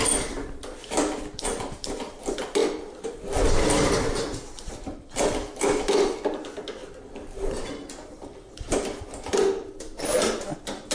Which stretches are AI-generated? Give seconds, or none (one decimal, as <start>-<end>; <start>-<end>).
none